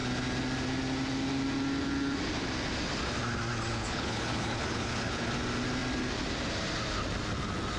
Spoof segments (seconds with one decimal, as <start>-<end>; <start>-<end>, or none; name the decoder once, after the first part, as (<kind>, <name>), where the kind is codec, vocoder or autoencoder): 3.7-5.3 (codec, HILCodec)